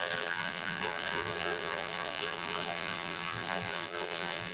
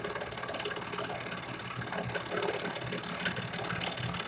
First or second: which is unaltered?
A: second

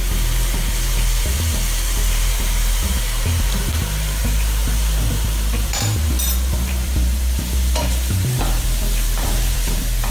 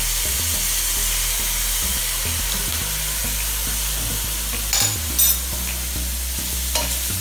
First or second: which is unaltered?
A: second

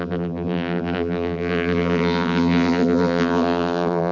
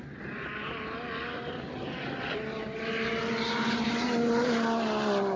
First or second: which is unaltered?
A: second